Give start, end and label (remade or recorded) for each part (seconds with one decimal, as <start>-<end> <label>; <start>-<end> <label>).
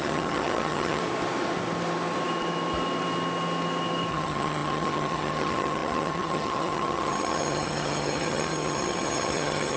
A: 0.0-1.0 remade; 1.0-4.1 recorded; 4.1-9.8 remade